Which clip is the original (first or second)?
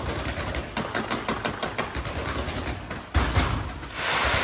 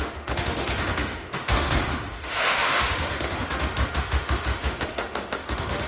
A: first